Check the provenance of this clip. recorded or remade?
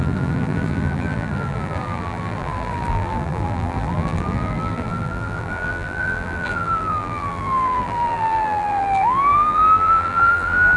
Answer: remade